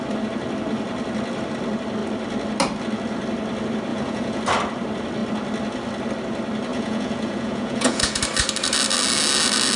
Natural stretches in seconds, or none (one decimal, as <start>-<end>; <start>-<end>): 0.0-3.9; 4.4-6.7; 8.2-9.8